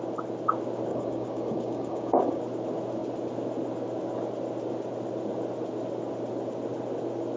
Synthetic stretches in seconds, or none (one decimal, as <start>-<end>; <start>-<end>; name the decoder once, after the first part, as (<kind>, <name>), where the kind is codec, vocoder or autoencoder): 0.9-2.4 (codec, DAC)